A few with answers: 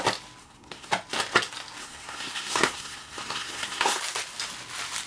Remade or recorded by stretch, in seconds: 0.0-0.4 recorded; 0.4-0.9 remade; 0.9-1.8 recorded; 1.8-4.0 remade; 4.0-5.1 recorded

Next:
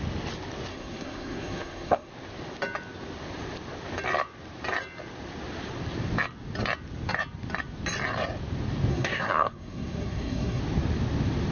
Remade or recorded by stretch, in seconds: 0.0-0.7 recorded; 0.7-2.1 remade; 2.1-8.9 recorded; 8.9-10.6 remade; 10.6-11.5 recorded

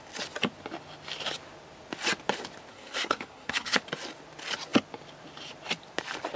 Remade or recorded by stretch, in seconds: 0.0-2.7 recorded; 2.7-3.8 remade; 3.8-6.4 recorded